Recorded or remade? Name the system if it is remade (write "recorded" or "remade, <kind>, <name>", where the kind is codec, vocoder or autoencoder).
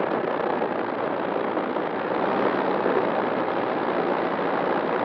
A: recorded